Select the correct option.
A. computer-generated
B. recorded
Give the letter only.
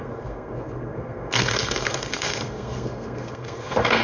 A